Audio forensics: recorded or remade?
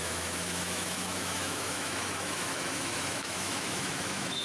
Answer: remade